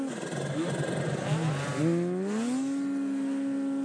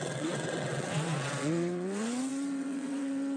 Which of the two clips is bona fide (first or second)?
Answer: first